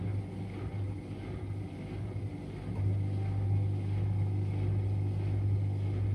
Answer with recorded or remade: recorded